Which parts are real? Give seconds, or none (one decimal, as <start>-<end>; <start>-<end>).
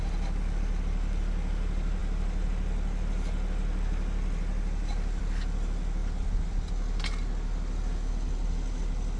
0.0-9.2